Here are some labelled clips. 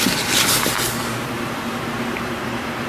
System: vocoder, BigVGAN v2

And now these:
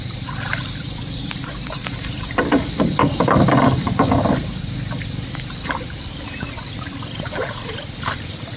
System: vocoder, BigVGAN v2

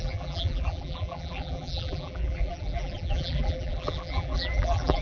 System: vocoder, BigVGAN v2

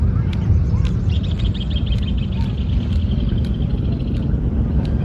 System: none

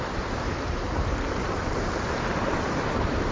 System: vocoder, BigVGAN v2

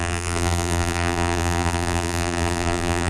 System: vocoder, BigVGAN v2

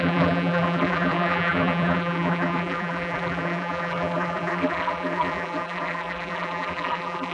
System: vocoder, BigVGAN v2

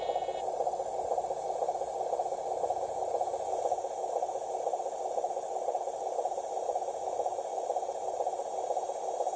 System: none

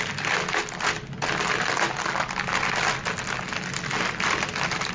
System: none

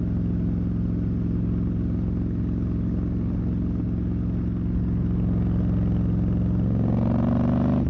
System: none